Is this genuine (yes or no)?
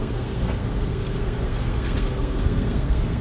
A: no